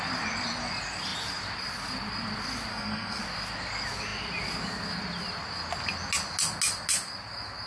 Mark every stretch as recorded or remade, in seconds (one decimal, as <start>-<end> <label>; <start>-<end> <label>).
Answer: 0.0-2.7 recorded; 2.7-3.2 remade; 3.2-7.7 recorded